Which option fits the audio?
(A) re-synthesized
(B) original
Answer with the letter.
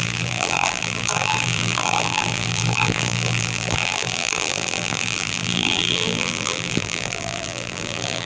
A